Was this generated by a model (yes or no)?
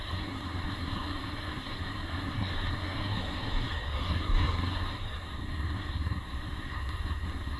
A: yes